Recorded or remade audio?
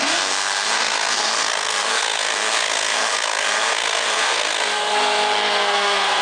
remade